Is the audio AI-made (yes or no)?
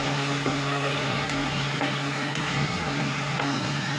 yes